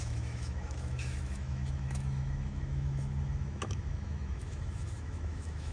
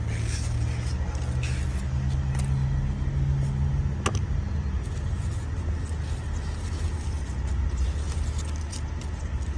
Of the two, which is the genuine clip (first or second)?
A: second